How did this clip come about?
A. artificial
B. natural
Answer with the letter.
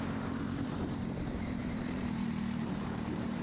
A